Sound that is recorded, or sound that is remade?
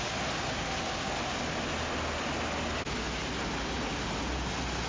recorded